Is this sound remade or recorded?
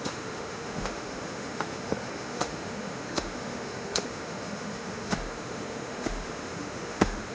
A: remade